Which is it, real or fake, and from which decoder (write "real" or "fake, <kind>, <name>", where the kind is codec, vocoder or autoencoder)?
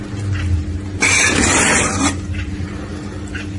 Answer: real